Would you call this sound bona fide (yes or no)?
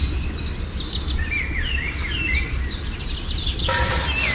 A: yes